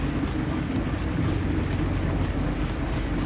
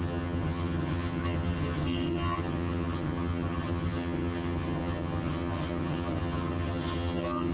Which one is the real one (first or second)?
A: first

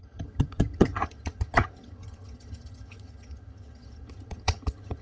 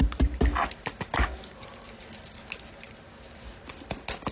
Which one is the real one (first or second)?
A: second